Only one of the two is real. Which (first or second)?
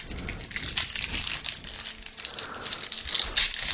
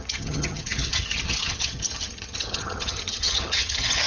first